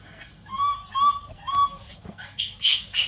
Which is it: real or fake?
fake